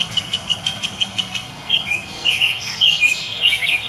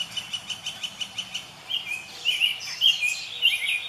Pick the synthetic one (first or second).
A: first